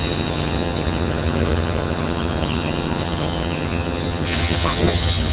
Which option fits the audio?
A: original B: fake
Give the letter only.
B